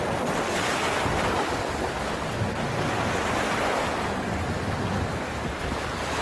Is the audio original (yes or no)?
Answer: yes